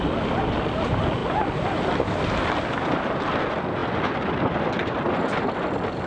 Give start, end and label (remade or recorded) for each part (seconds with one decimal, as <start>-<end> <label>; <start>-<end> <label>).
0.0-6.1 recorded